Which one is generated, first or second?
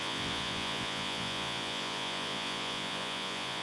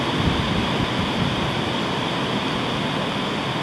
first